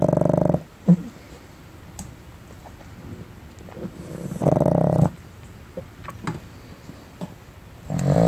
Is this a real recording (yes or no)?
yes